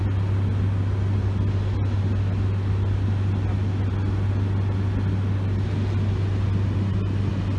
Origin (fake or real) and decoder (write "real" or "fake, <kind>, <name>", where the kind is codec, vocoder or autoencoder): real